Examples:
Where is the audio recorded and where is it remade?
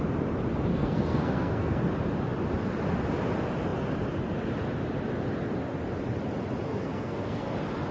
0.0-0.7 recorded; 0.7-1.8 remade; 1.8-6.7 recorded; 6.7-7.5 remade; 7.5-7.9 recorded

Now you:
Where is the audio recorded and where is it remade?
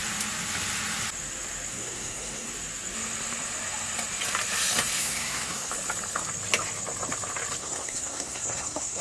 0.0-1.7 recorded; 1.7-2.5 remade; 2.5-5.0 recorded; 5.0-5.7 remade; 5.7-7.6 recorded; 7.6-9.0 remade